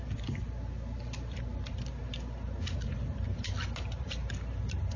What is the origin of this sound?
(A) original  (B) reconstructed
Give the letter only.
A